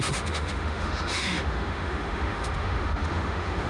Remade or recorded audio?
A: remade